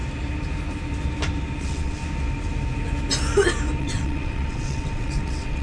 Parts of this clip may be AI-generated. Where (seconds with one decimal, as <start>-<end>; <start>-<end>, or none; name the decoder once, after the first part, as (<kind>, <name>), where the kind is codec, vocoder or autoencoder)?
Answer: 1.6-2.0 (vocoder, WaveNeXt); 3.8-5.6